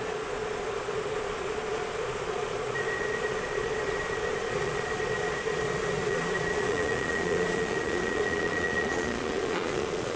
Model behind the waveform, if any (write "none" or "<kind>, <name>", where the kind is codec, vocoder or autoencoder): vocoder, Vocos